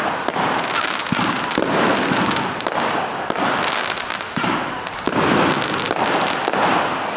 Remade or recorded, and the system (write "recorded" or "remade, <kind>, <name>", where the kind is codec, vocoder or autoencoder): recorded